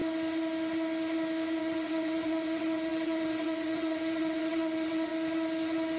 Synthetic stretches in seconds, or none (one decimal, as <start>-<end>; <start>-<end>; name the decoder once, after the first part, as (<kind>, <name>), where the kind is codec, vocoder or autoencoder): 1.6-5.1 (vocoder, WaveNeXt)